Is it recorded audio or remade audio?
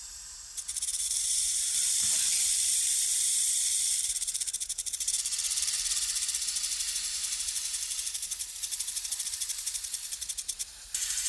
remade